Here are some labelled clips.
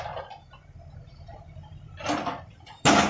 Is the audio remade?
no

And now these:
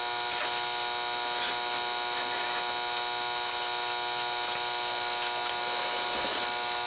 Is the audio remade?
no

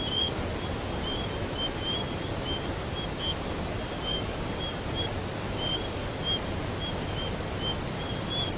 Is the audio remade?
no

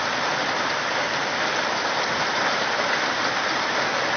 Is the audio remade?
no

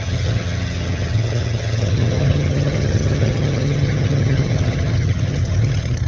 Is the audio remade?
yes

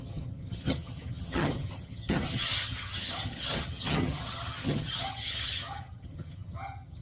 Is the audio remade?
yes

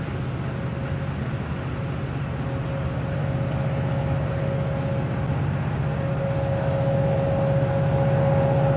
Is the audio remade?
no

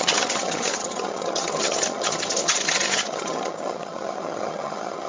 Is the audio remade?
yes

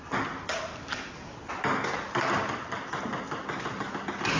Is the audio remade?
no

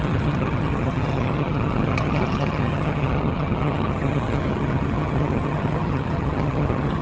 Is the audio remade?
yes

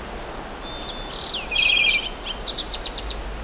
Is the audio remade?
no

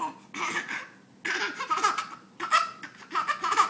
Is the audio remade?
no